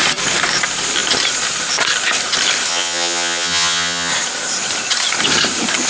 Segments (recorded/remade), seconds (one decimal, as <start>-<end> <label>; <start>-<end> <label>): 0.0-2.7 recorded; 2.7-4.1 remade; 4.1-5.9 recorded

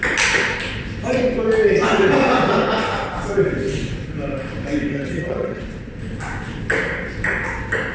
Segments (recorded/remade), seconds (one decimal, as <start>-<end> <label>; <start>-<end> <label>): 0.0-4.9 recorded; 4.9-5.6 remade; 5.6-7.9 recorded

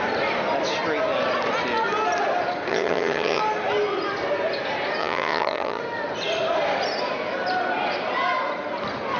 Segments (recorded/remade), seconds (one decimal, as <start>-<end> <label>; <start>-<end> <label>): 0.0-2.7 recorded; 2.7-3.4 remade; 3.4-5.0 recorded; 5.0-5.8 remade; 5.8-9.2 recorded